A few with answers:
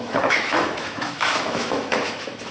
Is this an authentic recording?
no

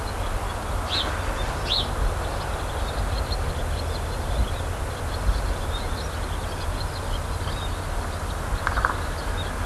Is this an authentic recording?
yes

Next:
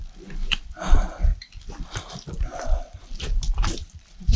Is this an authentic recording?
no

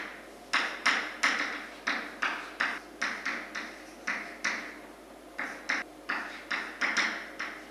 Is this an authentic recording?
yes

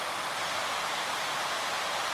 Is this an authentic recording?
yes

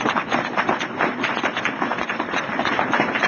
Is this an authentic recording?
yes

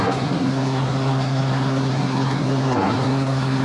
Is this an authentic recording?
no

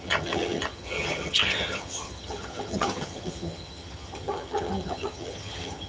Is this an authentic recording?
no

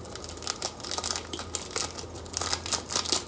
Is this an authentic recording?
yes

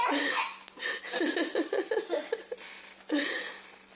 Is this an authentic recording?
yes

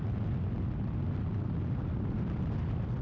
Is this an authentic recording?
yes